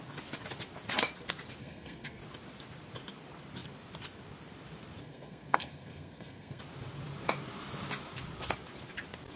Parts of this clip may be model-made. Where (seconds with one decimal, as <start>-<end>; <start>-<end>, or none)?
1.6-2.2; 5.0-6.6